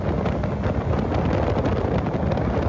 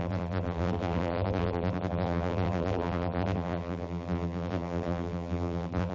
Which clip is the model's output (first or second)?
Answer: second